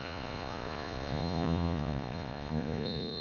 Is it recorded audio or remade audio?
remade